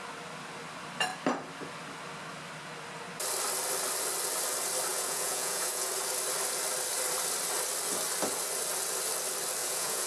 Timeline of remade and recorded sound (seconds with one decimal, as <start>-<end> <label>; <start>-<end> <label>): 0.0-4.9 recorded; 4.9-5.9 remade; 5.9-9.6 recorded; 9.6-10.1 remade